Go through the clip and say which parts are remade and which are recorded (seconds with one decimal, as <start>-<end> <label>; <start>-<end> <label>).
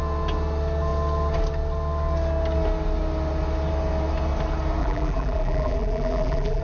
0.0-4.8 recorded; 4.8-6.6 remade